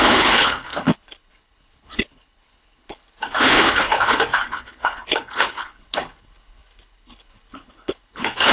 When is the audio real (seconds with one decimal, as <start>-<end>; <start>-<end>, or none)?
none